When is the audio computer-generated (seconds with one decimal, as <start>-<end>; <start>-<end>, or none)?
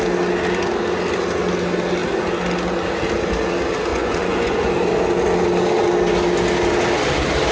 3.9-4.7